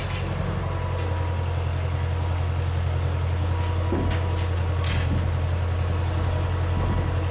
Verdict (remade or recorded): recorded